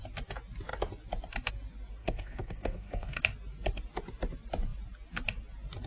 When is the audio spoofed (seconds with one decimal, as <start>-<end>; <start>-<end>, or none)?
2.0-3.2